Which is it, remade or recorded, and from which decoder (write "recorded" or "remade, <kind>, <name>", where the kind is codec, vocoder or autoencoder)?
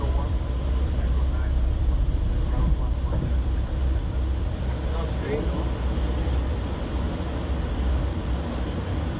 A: recorded